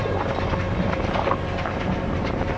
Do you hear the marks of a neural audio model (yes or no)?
yes